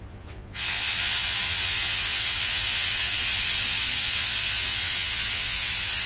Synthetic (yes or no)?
yes